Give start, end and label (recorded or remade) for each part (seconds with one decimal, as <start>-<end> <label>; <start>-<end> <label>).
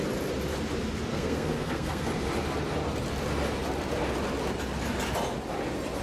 0.0-1.1 recorded; 1.1-2.1 remade; 2.1-6.0 recorded